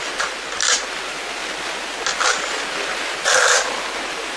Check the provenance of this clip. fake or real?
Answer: real